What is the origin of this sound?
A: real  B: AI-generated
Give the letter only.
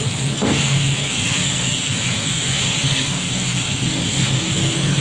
B